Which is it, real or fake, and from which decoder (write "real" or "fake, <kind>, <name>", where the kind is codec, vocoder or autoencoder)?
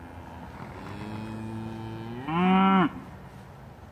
real